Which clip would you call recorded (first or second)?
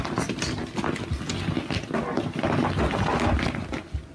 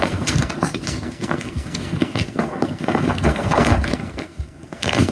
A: first